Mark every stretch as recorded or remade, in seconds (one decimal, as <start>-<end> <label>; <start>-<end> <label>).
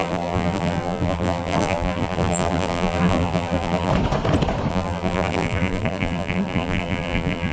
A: 0.0-3.9 remade; 3.9-4.7 recorded; 4.7-7.5 remade